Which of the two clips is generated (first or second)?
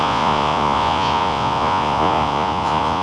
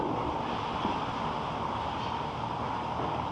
first